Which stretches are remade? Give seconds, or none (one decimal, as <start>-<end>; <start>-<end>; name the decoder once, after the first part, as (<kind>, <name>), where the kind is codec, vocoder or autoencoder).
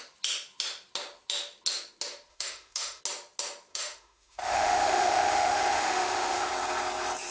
2.3-3.0 (autoencoder, DAC-VAE); 3.7-6.5